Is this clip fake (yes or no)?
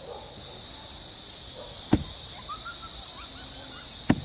no